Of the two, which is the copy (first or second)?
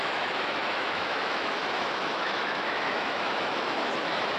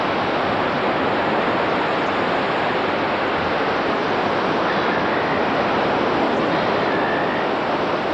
first